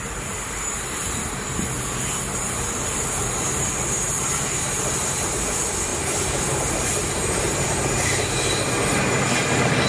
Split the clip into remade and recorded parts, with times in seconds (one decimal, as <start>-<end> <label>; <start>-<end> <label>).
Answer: 0.0-2.3 recorded; 2.3-3.1 remade; 3.1-9.9 recorded